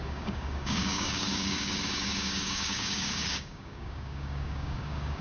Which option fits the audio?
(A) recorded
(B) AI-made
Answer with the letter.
B